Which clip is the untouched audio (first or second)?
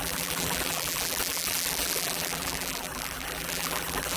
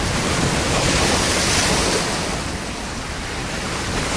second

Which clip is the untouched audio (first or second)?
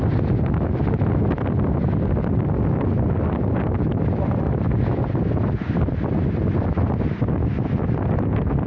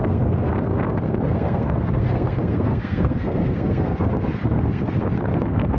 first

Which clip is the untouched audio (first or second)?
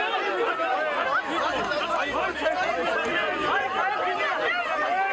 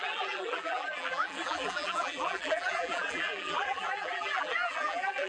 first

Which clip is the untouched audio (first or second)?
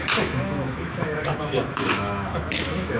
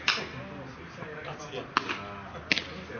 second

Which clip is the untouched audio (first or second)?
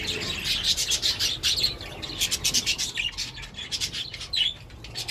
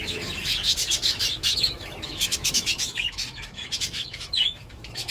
first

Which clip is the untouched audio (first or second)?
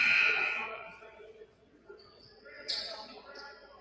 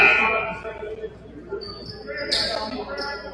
second